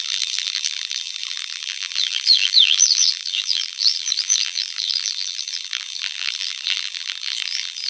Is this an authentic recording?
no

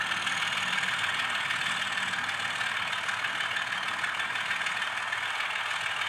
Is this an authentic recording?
yes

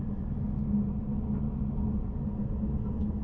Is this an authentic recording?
yes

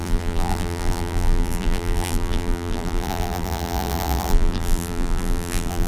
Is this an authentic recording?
no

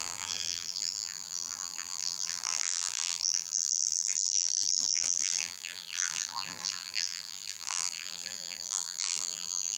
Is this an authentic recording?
no